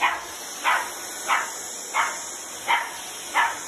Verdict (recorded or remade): recorded